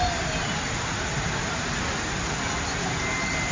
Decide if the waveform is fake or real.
real